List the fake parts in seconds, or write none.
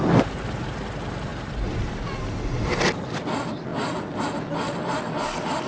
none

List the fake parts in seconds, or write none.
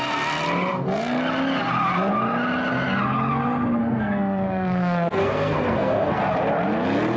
3.8-6.2 (codec, SNAC)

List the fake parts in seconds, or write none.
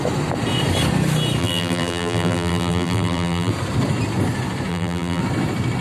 1.4-3.5 (vocoder, BigVGAN v2); 4.7-5.2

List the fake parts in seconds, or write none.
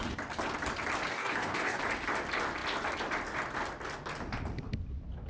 1.1-1.8 (codec, DAC)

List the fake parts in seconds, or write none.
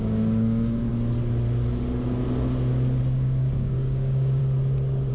0.0-0.9 (codec, DAC); 3.0-4.4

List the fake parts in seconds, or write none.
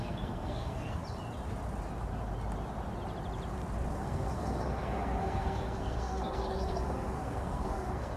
0.0-1.0 (codec, SNAC); 3.9-8.2